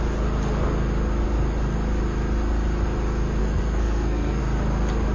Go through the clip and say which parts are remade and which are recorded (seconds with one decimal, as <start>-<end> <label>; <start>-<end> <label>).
0.0-3.4 recorded; 3.4-4.4 remade; 4.4-5.1 recorded